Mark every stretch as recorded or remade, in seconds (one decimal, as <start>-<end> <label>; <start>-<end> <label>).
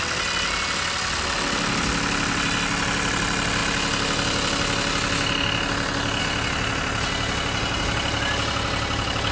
0.0-9.3 recorded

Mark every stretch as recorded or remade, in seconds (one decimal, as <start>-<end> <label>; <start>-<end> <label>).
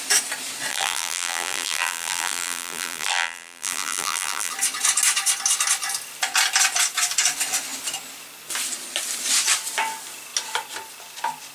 0.0-0.7 recorded; 0.7-4.5 remade; 4.5-11.5 recorded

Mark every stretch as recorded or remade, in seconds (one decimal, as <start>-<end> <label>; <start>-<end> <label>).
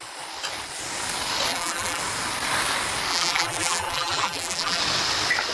0.0-1.5 recorded; 1.5-2.0 remade; 2.0-3.1 recorded; 3.1-4.8 remade; 4.8-5.5 recorded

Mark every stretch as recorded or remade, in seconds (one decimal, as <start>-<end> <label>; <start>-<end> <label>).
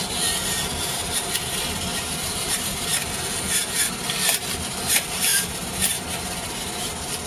0.0-1.9 recorded; 1.9-2.8 remade; 2.8-5.3 recorded; 5.3-5.8 remade; 5.8-7.3 recorded